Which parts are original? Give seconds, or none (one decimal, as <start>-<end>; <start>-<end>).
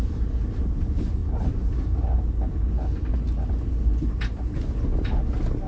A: 0.0-5.7